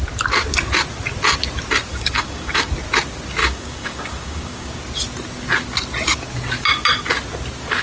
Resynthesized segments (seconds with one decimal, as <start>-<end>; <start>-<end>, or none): 1.9-2.7; 3.4-4.8